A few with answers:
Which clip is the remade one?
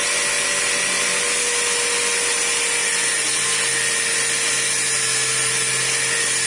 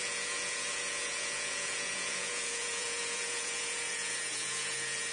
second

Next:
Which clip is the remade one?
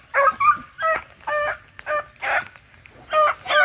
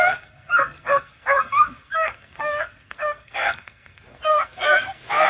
second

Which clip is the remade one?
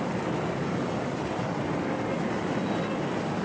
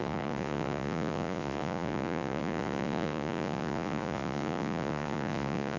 second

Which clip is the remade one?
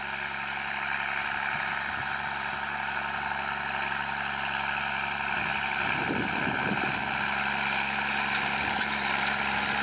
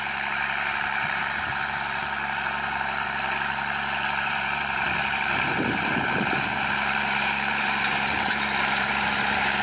second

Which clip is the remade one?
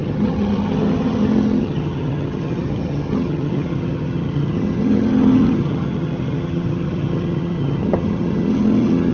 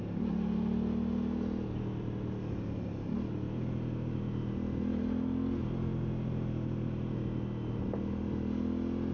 first